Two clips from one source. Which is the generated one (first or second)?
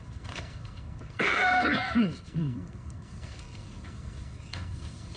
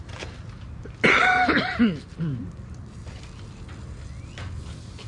first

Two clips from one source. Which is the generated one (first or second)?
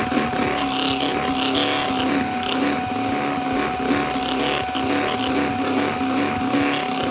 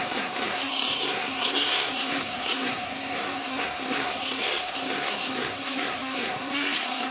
second